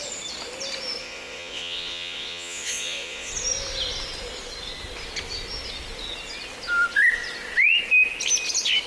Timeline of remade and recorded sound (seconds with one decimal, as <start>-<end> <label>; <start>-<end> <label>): 0.0-1.0 recorded; 1.0-3.3 remade; 3.3-8.9 recorded